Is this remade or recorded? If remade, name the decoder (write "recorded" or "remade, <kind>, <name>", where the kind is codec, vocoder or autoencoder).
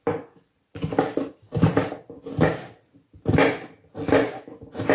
recorded